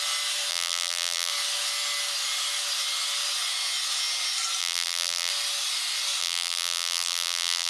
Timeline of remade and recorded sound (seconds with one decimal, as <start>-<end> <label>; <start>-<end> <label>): 0.0-0.5 recorded; 0.5-1.3 remade; 1.3-4.6 recorded; 4.6-5.3 remade; 5.3-6.2 recorded; 6.2-7.7 remade